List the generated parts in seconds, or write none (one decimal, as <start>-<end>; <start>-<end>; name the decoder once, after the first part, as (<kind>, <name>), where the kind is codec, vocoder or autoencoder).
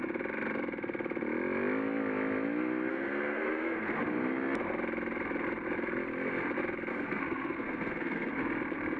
2.9-4.0 (codec, SNAC); 6.9-8.4